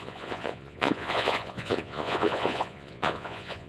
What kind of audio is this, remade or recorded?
remade